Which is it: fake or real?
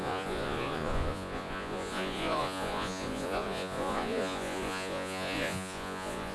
fake